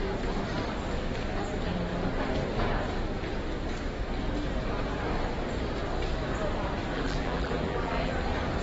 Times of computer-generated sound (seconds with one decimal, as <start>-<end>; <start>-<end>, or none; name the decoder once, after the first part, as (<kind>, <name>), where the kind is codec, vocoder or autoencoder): 6.9-8.1 (vocoder, BigVGAN v2)